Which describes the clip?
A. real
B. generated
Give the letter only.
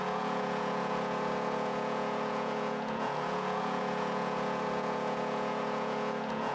B